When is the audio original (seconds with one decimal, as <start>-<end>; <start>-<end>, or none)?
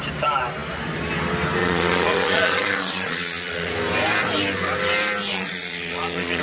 0.0-1.6; 3.7-5.3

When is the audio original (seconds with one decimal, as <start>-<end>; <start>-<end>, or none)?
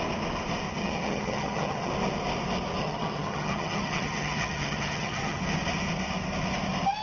0.0-0.8; 1.9-2.8; 5.4-7.0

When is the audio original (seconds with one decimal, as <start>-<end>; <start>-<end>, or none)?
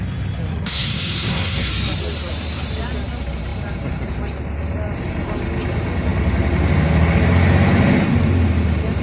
0.0-0.5; 1.7-9.0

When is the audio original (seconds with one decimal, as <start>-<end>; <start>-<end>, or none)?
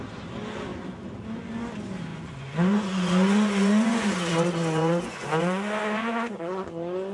0.0-2.1; 6.4-7.1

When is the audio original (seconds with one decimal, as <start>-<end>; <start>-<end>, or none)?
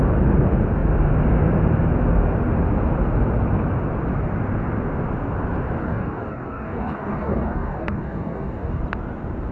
0.0-5.8; 8.8-9.5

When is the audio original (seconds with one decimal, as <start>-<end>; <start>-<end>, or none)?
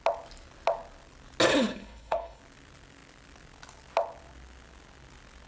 0.0-1.5; 2.4-5.5